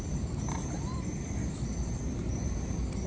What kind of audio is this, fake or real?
fake